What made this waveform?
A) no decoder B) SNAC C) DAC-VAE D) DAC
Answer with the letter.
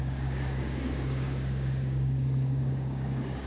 D